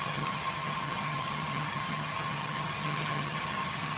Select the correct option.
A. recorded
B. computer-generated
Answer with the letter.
B